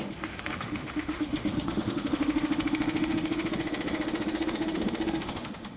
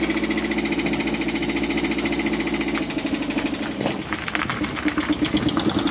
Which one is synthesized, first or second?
first